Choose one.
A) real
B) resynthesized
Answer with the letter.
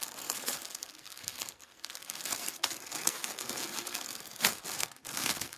B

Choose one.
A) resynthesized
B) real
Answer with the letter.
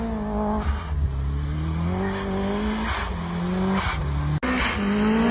B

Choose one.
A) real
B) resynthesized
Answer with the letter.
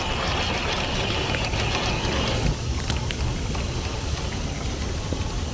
A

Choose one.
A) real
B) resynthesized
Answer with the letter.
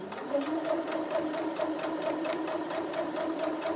B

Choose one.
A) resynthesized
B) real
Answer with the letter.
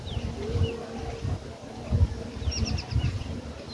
B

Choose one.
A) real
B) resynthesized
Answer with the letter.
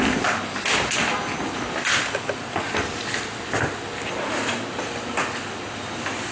A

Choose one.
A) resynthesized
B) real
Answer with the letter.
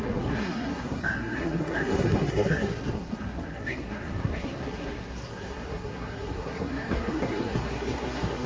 A